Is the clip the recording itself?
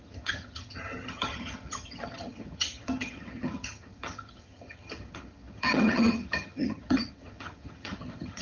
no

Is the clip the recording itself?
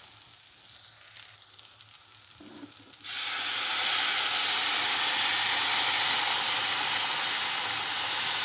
yes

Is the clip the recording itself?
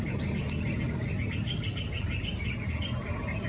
yes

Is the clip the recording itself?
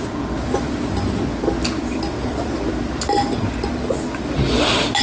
yes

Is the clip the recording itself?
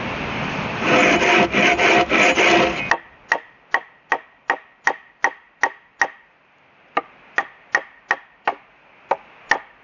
yes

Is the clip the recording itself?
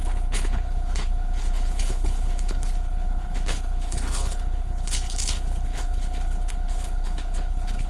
no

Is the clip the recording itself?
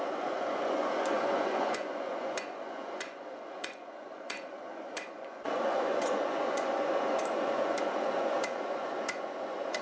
no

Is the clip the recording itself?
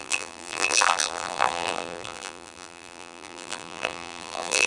no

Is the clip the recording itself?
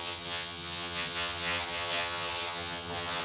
no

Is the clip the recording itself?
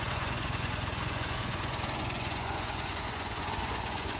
no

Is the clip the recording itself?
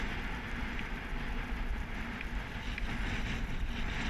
yes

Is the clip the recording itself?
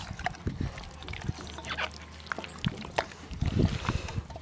yes